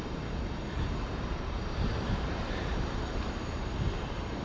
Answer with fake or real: fake